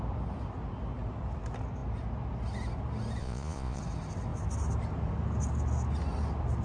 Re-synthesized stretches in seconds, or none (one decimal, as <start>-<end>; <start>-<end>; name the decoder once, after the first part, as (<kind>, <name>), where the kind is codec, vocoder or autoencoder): 3.2-3.8 (vocoder, Vocos)